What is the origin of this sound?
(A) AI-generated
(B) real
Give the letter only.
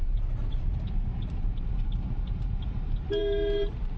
A